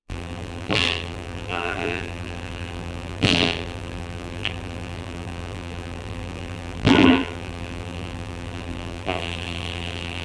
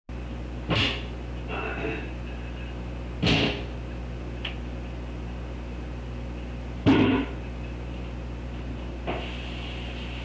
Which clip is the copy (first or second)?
first